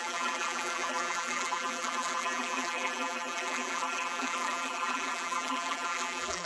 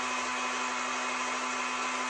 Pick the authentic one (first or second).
second